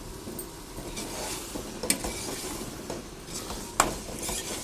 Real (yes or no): yes